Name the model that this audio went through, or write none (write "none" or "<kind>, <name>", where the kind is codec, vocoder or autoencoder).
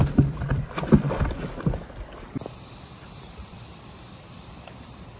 vocoder, BigVGAN v2